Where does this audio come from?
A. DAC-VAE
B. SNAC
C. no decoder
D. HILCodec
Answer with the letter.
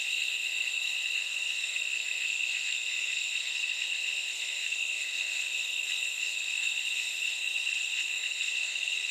B